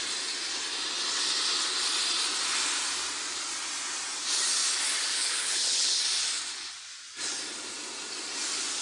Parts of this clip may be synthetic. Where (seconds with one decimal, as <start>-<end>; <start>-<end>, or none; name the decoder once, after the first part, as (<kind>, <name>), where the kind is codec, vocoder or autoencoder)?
5.1-6.0 (codec, HILCodec)